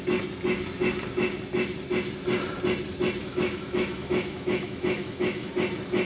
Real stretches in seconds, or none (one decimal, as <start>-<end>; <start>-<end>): 0.0-3.2; 5.5-6.0